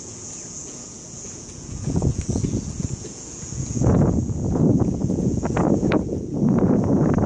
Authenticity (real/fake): fake